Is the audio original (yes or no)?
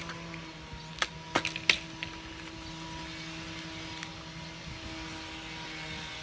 yes